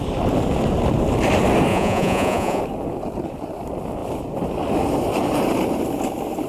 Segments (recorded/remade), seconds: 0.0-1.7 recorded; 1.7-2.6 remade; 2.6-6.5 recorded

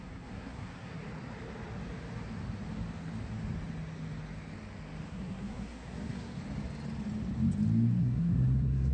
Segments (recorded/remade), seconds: 0.0-1.0 remade; 1.0-5.1 recorded; 5.1-6.4 remade; 6.4-8.0 recorded; 8.0-8.9 remade